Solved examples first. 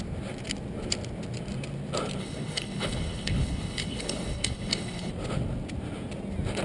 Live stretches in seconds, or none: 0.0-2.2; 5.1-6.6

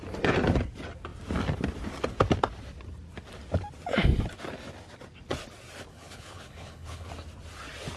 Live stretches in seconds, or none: 0.0-5.9; 7.1-8.0

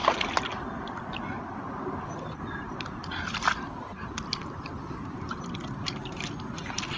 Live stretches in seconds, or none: 0.0-7.0